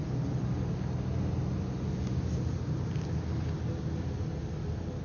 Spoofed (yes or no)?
no